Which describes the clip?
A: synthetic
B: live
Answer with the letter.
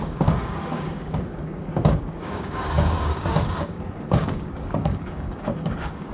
A